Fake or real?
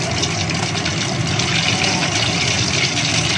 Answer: real